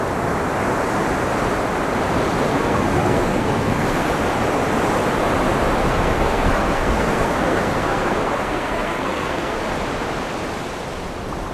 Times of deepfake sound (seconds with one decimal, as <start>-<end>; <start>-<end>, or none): 2.5-4.1; 5.8-9.6